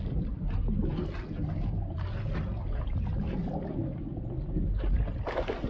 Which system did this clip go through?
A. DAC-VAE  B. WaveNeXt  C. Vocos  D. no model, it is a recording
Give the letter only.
D